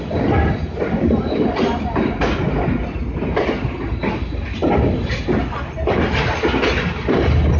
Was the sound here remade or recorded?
recorded